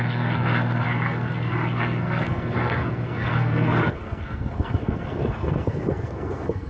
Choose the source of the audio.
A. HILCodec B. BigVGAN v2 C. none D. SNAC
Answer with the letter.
D